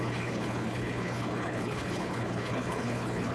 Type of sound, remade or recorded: remade